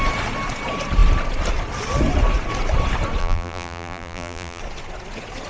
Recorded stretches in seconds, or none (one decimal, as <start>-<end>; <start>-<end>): 0.0-3.2; 4.6-5.5